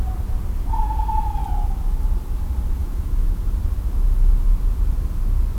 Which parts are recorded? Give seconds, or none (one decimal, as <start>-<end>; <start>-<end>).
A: 0.0-2.8; 3.4-5.6